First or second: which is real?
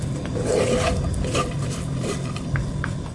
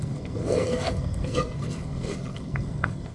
first